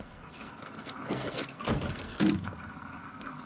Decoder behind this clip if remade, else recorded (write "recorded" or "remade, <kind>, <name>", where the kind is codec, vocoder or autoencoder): remade, codec, SNAC